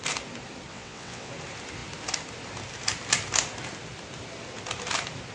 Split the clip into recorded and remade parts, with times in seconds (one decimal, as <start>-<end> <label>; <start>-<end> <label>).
0.0-0.7 recorded; 0.7-1.3 remade; 1.3-5.3 recorded